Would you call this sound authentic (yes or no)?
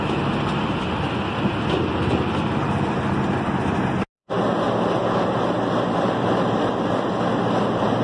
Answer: yes